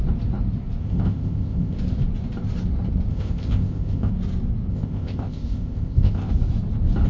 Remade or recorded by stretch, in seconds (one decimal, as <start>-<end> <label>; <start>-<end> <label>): 0.0-0.8 recorded; 0.8-1.8 remade; 1.8-3.1 recorded; 3.1-4.1 remade; 4.1-4.7 recorded; 4.7-6.3 remade; 6.3-7.1 recorded